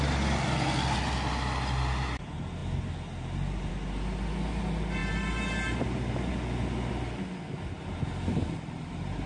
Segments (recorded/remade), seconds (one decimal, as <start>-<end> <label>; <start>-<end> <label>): 0.0-9.3 recorded